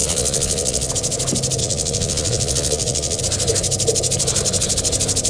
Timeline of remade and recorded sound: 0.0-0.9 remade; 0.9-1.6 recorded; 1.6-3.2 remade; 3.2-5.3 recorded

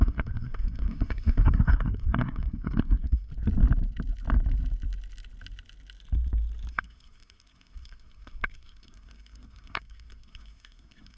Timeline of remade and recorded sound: 0.0-3.3 remade; 3.3-6.7 recorded; 6.7-11.2 remade

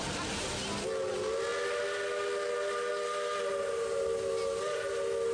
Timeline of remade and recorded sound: 0.0-5.3 recorded

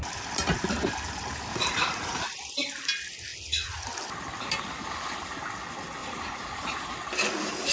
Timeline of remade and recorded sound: 0.0-1.5 recorded; 1.5-2.2 remade; 2.2-6.0 recorded; 6.0-6.9 remade; 6.9-7.7 recorded

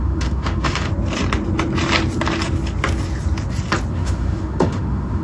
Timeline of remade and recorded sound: 0.0-0.9 remade; 0.9-3.9 recorded; 3.9-5.2 remade

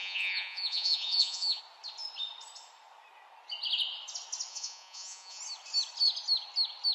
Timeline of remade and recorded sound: 0.0-1.6 remade; 1.6-4.5 recorded; 4.5-5.4 remade; 5.4-6.9 recorded

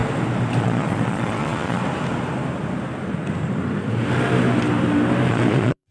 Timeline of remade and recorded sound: 0.0-0.6 recorded; 0.6-1.8 remade; 1.8-5.3 recorded; 5.3-5.9 remade

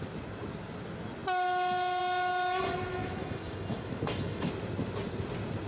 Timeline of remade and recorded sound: 0.0-2.9 recorded; 2.9-4.5 remade; 4.5-5.7 recorded